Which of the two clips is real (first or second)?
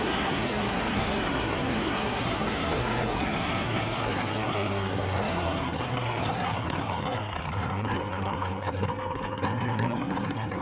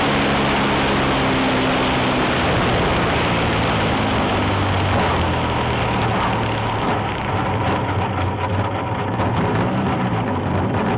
second